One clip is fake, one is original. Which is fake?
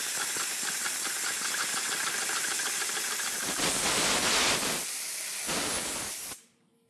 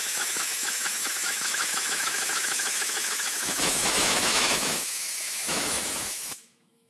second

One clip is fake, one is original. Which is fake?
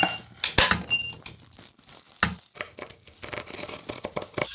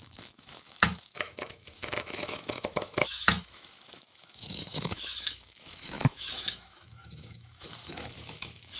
second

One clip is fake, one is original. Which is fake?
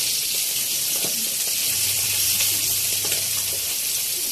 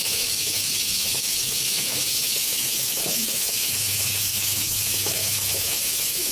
second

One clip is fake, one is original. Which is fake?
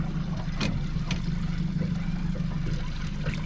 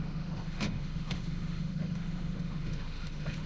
second